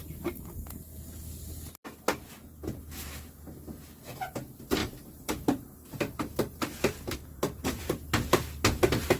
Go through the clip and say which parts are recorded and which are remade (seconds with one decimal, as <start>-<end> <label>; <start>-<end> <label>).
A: 0.0-4.8 recorded; 4.8-7.8 remade; 7.8-9.2 recorded